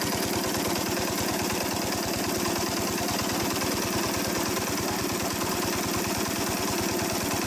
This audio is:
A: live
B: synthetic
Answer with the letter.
A